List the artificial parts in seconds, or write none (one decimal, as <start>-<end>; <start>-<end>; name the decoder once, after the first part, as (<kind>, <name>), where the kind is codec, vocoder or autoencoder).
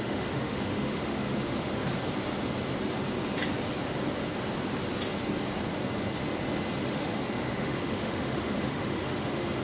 0.0-1.8 (autoencoder, DAC-VAE); 6.8-9.6